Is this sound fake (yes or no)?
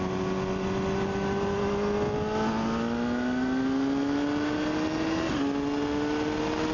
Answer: no